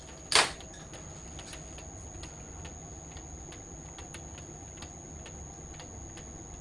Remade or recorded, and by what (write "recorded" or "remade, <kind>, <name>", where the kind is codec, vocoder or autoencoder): recorded